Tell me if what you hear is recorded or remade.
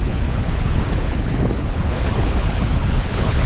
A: remade